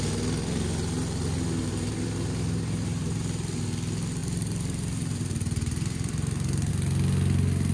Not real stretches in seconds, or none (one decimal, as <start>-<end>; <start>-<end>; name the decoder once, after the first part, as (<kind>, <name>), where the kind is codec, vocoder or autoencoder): 1.6-3.2 (vocoder, BigVGAN v2); 4.2-6.7